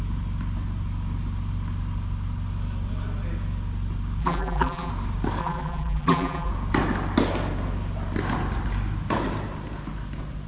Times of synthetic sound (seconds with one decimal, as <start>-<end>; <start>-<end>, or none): 4.2-4.9; 5.4-6.5